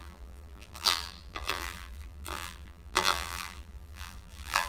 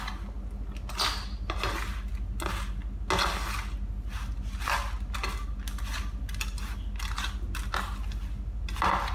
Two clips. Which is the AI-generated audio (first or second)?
first